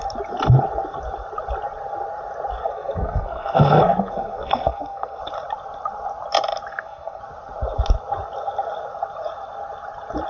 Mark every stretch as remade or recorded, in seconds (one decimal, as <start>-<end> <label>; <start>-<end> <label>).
0.0-2.6 recorded; 2.6-5.2 remade; 5.2-6.7 recorded; 6.7-7.2 remade; 7.2-10.3 recorded